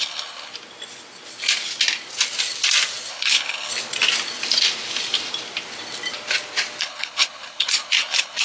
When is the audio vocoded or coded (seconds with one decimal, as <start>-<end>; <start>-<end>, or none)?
0.0-0.5; 3.1-3.7; 6.8-8.4